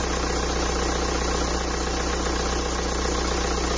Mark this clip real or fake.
real